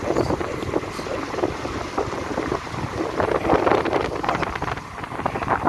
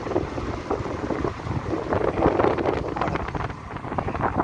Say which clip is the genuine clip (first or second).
second